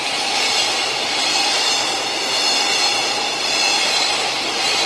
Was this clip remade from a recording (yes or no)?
no